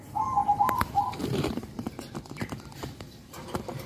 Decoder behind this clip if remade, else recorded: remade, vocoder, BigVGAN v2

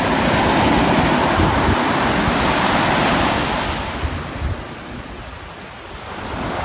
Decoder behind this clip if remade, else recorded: recorded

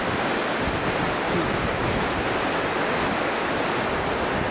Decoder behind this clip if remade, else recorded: recorded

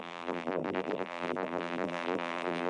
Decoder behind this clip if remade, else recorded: remade, vocoder, BigVGAN v2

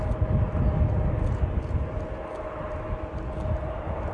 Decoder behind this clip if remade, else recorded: recorded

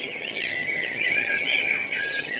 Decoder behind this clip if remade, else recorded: remade, vocoder, HiFi-GAN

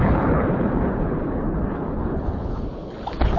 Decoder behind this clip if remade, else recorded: remade, codec, HILCodec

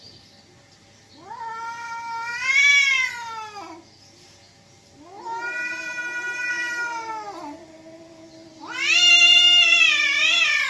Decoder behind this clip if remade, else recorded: recorded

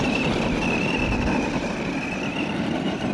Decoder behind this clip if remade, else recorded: recorded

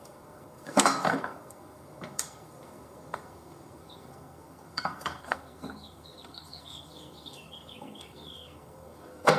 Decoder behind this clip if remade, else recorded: remade, codec, SNAC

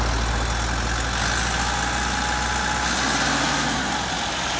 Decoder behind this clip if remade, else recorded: recorded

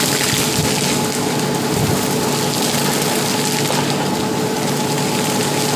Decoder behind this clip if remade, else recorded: recorded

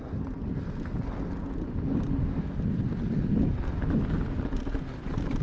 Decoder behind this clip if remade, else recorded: recorded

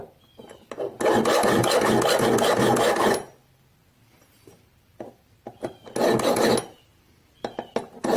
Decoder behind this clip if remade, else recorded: recorded